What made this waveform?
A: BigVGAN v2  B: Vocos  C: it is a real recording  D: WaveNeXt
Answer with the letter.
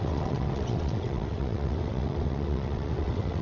D